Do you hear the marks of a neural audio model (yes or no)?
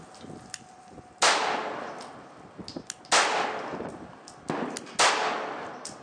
no